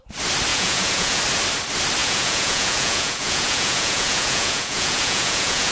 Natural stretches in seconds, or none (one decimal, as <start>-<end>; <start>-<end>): 0.0-0.5; 1.2-2.0